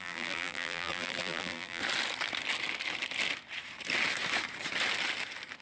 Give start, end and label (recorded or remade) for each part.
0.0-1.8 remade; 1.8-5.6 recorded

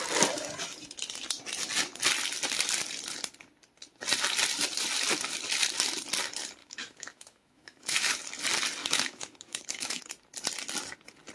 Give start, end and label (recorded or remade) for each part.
0.0-6.6 recorded; 6.6-8.2 remade; 8.2-8.8 recorded; 8.8-10.0 remade; 10.0-11.3 recorded

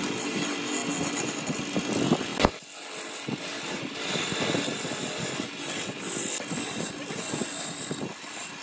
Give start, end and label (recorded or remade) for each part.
0.0-8.6 recorded